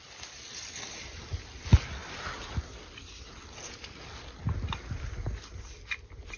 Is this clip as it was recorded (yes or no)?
yes